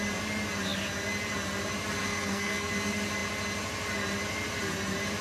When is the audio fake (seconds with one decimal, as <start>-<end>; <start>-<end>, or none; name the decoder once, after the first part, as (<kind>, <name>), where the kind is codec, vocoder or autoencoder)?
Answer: 2.0-2.7 (codec, SNAC)